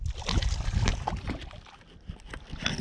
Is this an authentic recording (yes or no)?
yes